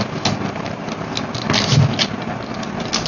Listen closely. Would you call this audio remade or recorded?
recorded